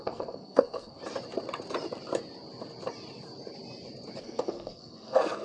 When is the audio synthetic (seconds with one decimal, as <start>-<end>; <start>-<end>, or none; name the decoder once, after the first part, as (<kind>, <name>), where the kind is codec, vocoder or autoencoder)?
0.0-1.0 (codec, SNAC); 4.2-5.4